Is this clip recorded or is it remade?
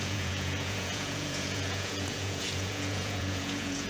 remade